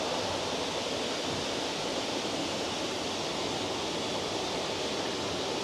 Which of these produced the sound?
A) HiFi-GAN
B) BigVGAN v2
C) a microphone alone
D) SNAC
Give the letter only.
C